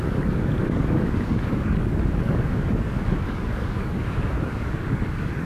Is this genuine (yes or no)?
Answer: no